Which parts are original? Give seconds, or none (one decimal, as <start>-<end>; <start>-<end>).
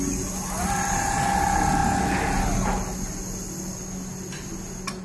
0.0-5.0